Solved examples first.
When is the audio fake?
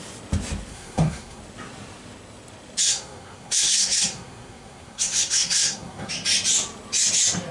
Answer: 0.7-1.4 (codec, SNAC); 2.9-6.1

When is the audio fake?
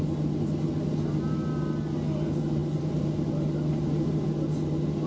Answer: none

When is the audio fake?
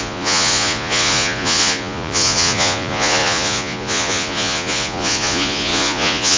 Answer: 0.0-6.4 (vocoder, Vocos)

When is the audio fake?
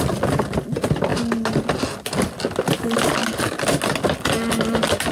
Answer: none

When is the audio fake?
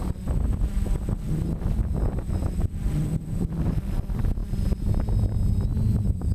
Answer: none